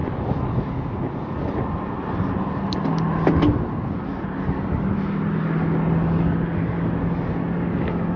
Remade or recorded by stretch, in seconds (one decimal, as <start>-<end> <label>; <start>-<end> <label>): 0.0-8.2 recorded